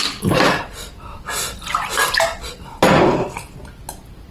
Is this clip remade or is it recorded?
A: recorded